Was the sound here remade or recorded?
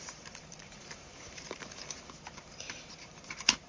remade